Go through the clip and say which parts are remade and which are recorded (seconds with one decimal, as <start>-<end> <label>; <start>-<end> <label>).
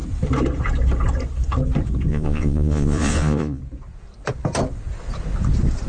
0.0-2.1 recorded; 2.1-3.6 remade; 3.6-5.9 recorded